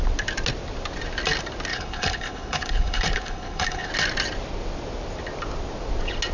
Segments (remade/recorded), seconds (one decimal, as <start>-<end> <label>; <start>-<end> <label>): 0.0-1.7 recorded; 1.7-3.9 remade; 3.9-6.3 recorded